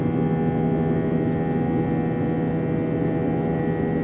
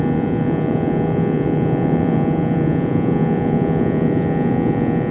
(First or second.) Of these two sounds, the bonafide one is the first